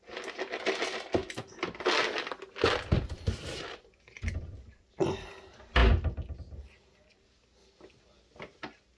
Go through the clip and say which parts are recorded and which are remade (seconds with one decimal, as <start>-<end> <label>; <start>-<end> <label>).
0.0-9.0 recorded